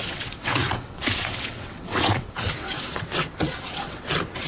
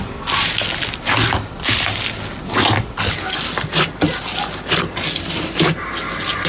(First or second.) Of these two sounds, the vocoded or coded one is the first